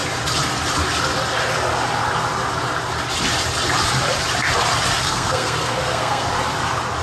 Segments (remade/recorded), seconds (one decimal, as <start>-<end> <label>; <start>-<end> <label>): 0.0-5.0 recorded; 5.0-6.3 remade; 6.3-7.0 recorded